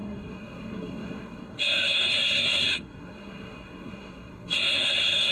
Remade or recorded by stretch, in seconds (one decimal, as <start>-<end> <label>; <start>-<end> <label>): 0.0-5.3 remade